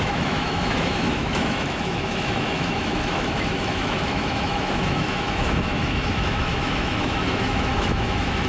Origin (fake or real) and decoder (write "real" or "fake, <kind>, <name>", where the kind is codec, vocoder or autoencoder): fake, autoencoder, DAC-VAE